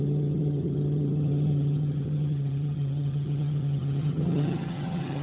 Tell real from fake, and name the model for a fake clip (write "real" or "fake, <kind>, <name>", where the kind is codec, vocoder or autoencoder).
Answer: fake, vocoder, HiFi-GAN